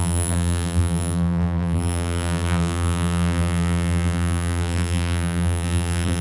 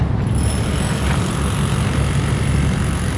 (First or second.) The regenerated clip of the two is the first